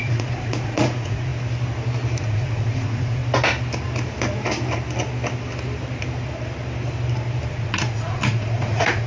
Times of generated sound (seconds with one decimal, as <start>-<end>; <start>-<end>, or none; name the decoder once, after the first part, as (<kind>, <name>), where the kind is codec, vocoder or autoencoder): 0.0-1.3 (vocoder, Vocos); 2.2-3.2; 7.5-9.1